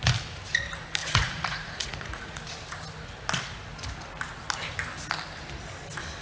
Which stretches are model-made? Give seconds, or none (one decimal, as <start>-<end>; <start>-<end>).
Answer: 1.0-2.4